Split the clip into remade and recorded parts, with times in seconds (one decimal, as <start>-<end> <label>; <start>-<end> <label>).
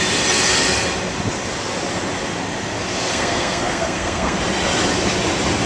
0.0-3.1 recorded; 3.1-4.4 remade; 4.4-5.7 recorded